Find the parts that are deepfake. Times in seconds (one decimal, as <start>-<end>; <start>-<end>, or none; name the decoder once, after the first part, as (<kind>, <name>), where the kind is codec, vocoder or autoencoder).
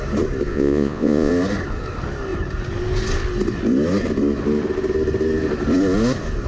0.5-1.3 (vocoder, Vocos)